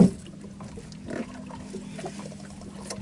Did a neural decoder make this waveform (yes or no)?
no